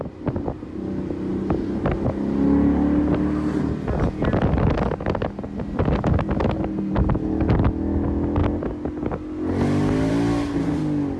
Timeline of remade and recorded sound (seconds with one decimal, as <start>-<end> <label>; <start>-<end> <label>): 0.0-11.2 recorded